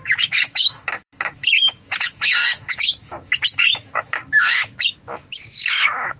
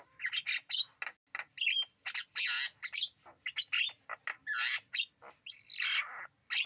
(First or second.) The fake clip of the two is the first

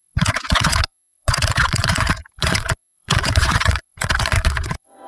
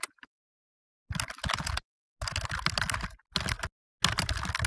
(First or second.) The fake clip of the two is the first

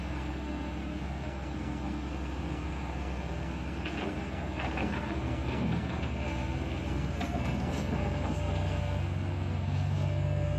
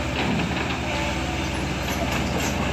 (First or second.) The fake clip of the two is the first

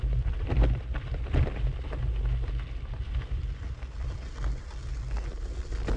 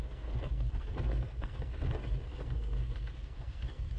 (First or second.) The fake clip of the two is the second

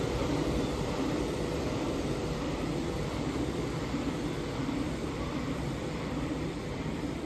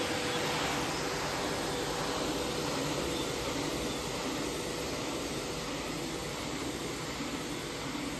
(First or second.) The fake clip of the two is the first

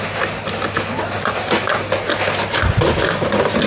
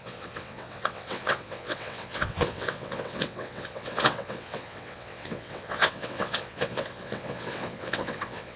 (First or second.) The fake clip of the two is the second